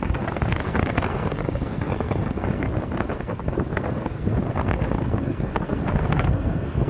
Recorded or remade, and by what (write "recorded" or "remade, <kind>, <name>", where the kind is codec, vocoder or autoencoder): remade, codec, SNAC